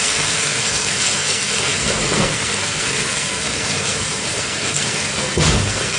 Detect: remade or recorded remade